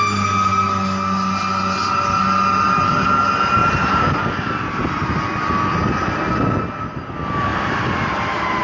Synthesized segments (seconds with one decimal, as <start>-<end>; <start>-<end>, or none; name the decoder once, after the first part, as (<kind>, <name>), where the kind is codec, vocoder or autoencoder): 3.6-4.8 (vocoder, BigVGAN v2); 5.8-6.3; 7.5-8.6